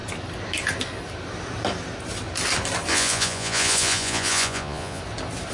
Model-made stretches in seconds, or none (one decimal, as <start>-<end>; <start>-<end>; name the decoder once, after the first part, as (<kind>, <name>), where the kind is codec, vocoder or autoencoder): 2.9-5.0 (vocoder, Vocos)